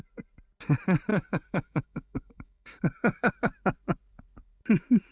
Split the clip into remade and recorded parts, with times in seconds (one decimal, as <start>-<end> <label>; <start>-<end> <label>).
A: 0.0-1.1 recorded; 1.1-3.3 remade; 3.3-5.1 recorded